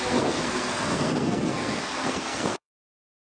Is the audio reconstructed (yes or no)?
yes